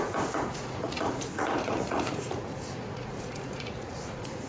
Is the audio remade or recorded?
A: remade